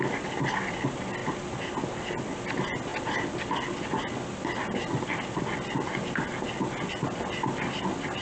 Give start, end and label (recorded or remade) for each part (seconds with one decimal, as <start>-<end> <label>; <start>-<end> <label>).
0.0-8.2 recorded